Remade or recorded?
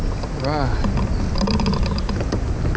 recorded